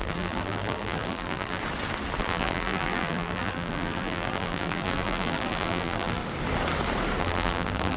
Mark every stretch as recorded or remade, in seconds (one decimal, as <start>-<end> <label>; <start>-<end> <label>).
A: 0.0-1.6 remade; 1.6-2.2 recorded; 2.2-6.2 remade; 6.2-7.2 recorded; 7.2-8.0 remade